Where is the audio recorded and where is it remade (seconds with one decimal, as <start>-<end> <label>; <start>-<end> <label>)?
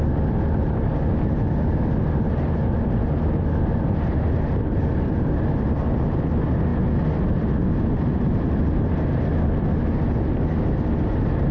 0.0-11.5 recorded